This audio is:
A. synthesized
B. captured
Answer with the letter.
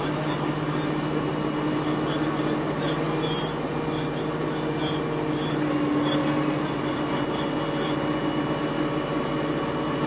B